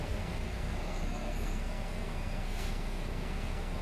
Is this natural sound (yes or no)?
no